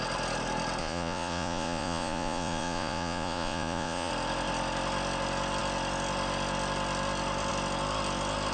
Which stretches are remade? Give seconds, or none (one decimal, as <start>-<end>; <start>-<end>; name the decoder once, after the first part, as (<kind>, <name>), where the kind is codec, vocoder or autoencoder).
0.8-4.1 (vocoder, Vocos)